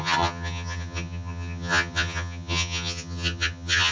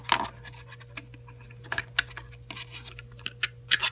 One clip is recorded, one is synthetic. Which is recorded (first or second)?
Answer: second